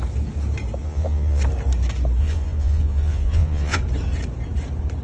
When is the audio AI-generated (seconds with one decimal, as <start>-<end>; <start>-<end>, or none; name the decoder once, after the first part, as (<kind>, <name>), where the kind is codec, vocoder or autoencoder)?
0.8-1.4 (vocoder, Vocos); 2.2-3.8